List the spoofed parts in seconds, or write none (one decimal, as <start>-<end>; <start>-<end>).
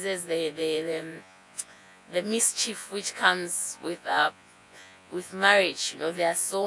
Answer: 0.0-6.7